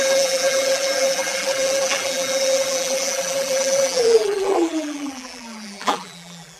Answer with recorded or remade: remade